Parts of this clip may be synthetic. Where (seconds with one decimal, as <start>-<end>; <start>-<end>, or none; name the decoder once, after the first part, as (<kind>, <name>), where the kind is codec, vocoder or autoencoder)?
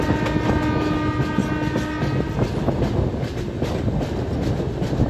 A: none